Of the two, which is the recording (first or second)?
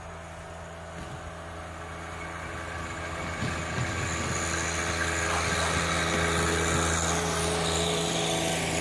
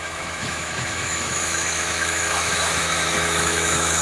first